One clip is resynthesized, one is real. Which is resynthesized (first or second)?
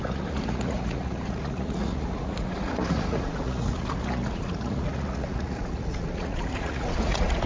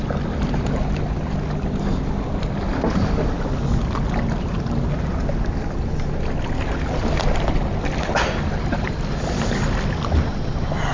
first